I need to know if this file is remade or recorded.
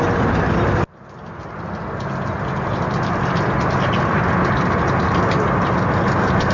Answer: recorded